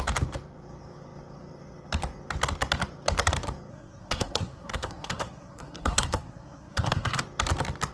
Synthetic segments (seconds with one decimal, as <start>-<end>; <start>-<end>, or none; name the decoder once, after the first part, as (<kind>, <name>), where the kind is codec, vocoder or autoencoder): 3.7-7.2 (codec, SNAC)